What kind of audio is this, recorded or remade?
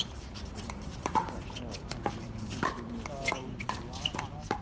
remade